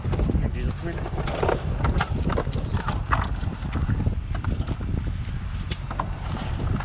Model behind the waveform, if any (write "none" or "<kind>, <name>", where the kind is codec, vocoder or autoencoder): none